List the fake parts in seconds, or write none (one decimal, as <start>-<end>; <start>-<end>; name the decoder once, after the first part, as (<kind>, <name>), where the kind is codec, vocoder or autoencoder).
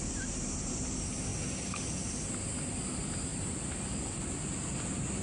none